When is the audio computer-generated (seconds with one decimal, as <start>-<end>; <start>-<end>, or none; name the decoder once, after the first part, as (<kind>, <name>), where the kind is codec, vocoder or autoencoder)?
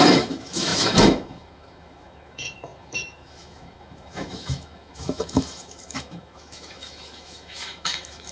0.0-8.3 (autoencoder, DAC-VAE)